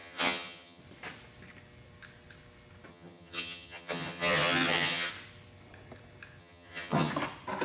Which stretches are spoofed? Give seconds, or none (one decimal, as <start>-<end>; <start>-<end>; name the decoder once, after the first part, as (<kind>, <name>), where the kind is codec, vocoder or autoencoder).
0.0-0.8 (vocoder, HiFi-GAN); 2.9-5.1; 6.4-7.1